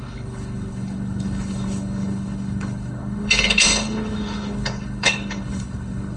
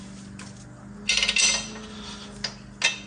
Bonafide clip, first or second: second